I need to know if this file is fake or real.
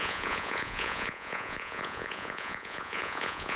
fake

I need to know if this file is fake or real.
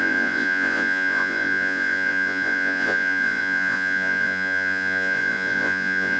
fake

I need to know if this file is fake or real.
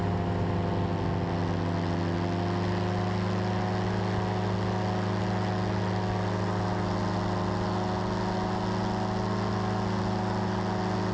real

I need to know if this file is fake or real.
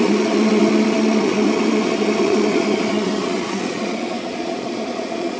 fake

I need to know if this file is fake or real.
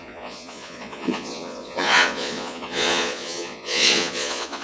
fake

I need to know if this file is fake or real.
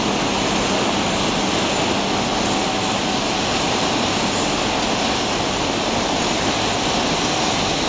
real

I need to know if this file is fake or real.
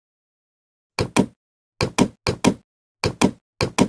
real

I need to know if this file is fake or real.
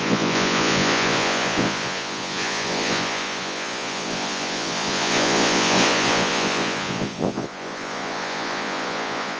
fake